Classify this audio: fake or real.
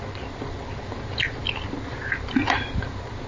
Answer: real